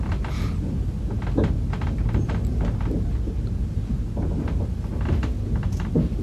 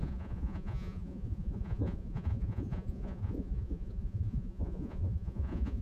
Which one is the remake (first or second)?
second